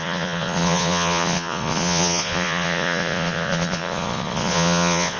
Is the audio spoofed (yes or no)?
yes